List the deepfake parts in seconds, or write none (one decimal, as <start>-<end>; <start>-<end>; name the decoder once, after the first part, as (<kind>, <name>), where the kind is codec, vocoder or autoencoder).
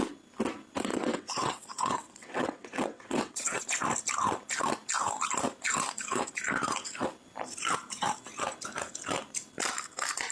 0.9-3.6 (vocoder, WaveNeXt)